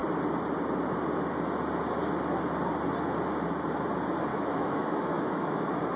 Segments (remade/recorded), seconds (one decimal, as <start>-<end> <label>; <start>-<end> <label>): 0.0-4.3 recorded; 4.3-6.0 remade